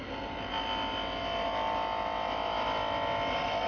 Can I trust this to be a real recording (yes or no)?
yes